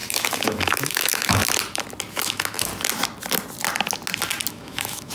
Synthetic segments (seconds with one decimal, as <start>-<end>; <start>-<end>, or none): 0.0-1.4; 2.1-2.7; 4.5-5.1